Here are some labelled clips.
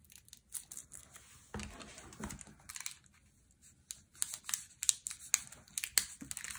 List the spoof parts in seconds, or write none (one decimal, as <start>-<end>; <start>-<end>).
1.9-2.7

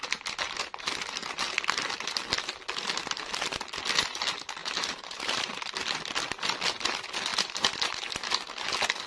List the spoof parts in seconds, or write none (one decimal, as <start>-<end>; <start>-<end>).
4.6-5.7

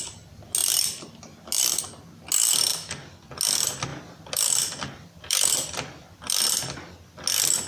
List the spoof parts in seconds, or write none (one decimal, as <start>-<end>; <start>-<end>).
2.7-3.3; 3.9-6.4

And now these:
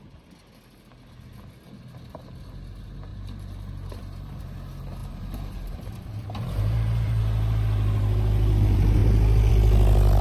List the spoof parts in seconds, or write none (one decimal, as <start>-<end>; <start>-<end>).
3.1-4.4; 5.0-7.2

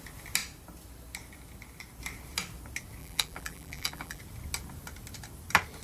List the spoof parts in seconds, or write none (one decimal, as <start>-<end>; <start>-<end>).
3.0-4.2